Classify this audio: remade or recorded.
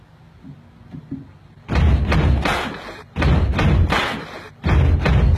recorded